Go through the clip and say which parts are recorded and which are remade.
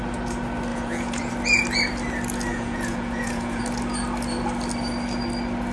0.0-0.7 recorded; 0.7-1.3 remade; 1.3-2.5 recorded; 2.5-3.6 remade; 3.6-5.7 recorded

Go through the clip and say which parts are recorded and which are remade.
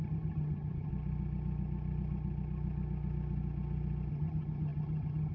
0.0-0.9 remade; 0.9-4.1 recorded; 4.1-5.3 remade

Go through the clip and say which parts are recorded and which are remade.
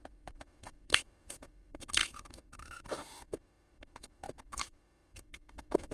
0.0-5.9 remade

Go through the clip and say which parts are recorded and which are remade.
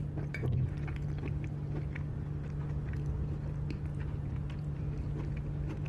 0.0-3.9 recorded; 3.9-4.8 remade; 4.8-5.9 recorded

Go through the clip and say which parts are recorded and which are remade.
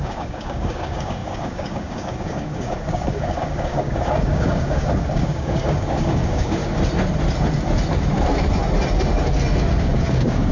0.0-6.6 remade; 6.6-9.8 recorded; 9.8-10.5 remade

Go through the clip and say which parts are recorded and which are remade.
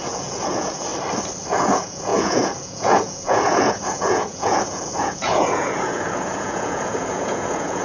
0.0-0.9 remade; 0.9-1.5 recorded; 1.5-7.8 remade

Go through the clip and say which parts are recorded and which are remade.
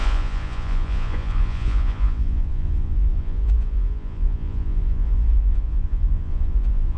0.0-7.0 remade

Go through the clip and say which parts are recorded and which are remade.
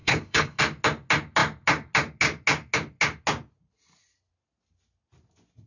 0.0-0.6 remade; 0.6-5.7 recorded